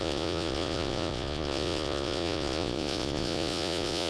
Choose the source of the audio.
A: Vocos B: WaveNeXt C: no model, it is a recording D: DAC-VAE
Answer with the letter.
A